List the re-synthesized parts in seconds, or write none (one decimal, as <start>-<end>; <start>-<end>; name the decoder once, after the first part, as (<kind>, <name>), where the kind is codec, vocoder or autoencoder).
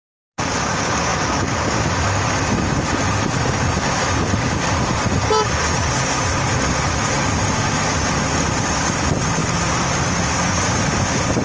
none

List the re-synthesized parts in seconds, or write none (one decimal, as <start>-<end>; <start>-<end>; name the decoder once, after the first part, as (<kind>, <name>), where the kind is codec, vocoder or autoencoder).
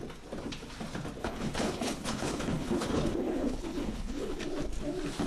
1.2-4.4 (codec, HILCodec)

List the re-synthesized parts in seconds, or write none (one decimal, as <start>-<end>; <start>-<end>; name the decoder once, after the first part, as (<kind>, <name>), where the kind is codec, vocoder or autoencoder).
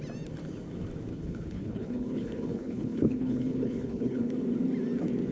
1.1-4.3 (codec, HILCodec)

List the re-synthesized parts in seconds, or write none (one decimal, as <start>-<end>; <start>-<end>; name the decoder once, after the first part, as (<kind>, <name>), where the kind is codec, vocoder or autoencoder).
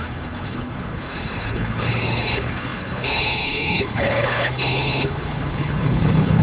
0.0-6.4 (codec, HILCodec)